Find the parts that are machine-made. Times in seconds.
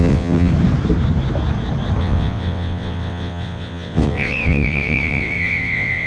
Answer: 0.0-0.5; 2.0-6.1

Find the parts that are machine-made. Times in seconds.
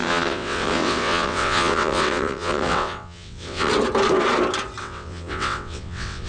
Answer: 0.0-3.7; 4.8-6.3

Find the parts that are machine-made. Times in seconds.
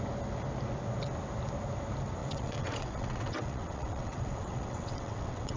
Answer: 2.2-5.6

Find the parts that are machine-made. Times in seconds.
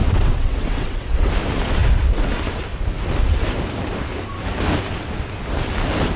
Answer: 0.0-1.3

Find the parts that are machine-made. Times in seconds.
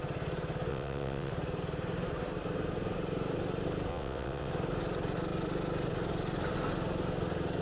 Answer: 0.7-1.3; 3.9-4.5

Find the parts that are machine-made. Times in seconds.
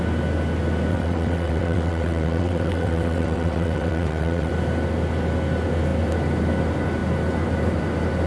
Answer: 0.9-4.5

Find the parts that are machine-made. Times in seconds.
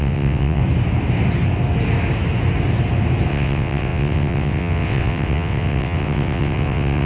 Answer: 0.0-0.6; 3.3-7.1